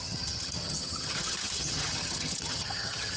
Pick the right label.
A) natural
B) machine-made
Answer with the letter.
B